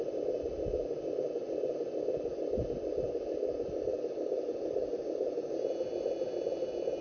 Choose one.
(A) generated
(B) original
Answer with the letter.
B